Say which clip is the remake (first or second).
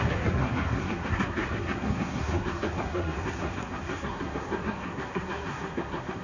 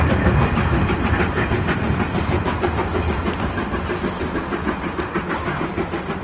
first